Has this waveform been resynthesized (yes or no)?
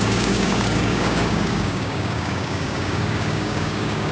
yes